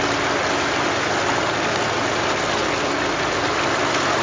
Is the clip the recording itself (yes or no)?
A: yes